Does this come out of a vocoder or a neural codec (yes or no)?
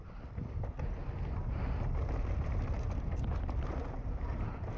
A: no